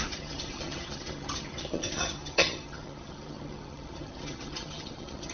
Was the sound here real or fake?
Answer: fake